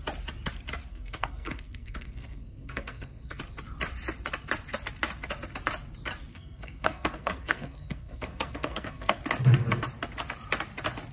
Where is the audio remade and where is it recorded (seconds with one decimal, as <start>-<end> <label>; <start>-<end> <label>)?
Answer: 0.0-0.9 recorded; 0.9-3.4 remade; 3.4-6.3 recorded; 6.3-9.2 remade; 9.2-11.1 recorded